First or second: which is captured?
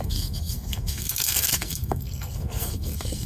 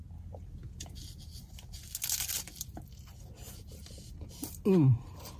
second